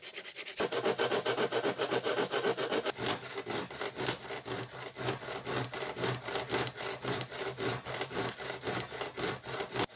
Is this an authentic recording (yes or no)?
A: yes